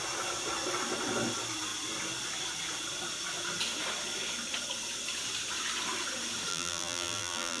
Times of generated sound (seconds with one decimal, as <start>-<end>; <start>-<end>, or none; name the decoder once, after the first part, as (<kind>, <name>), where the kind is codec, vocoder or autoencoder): 6.5-7.6 (vocoder, BigVGAN v2)